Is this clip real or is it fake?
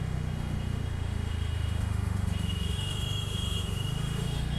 fake